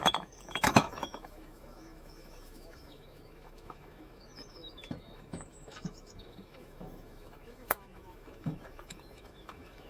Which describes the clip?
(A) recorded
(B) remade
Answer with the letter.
B